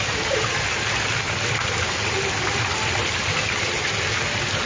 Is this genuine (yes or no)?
yes